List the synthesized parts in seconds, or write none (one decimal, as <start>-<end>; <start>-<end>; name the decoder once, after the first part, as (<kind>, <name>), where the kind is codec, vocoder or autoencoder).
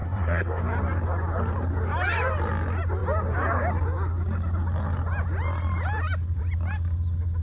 0.0-0.6 (codec, SNAC)